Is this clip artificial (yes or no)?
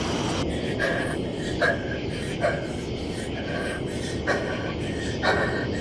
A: no